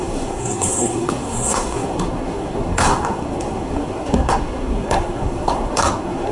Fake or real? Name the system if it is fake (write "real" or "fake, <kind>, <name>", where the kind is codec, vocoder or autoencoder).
fake, codec, SNAC